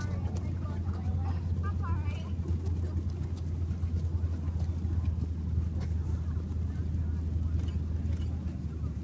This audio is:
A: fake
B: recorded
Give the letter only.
B